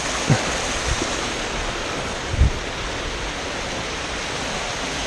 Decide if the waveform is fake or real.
real